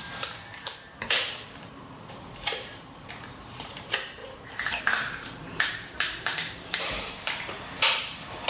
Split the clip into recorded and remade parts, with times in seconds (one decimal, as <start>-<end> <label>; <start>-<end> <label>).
0.0-8.5 remade